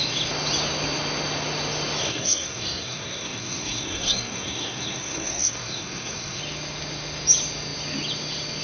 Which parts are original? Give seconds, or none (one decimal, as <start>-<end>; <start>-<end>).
0.0-2.0; 6.4-8.6